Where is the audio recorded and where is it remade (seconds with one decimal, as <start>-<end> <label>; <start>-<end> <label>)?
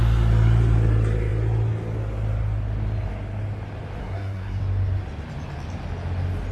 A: 0.0-4.0 recorded; 4.0-4.6 remade; 4.6-6.5 recorded